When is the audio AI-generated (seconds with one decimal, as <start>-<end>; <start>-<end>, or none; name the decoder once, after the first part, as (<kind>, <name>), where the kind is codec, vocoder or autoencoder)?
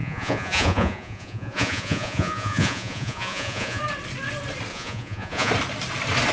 0.0-3.8 (vocoder, Vocos); 4.7-5.5